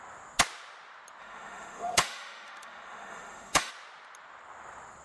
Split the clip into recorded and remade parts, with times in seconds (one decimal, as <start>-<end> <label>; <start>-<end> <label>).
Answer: 0.0-1.2 recorded; 1.2-3.7 remade; 3.7-5.0 recorded

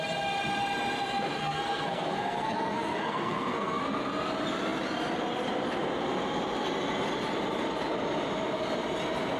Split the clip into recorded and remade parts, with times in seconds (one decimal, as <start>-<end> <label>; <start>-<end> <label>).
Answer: 0.0-1.4 recorded; 1.4-3.8 remade; 3.8-9.4 recorded